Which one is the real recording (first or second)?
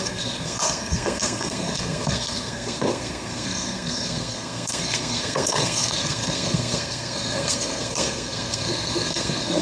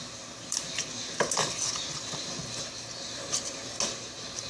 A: second